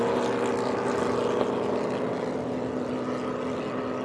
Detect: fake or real real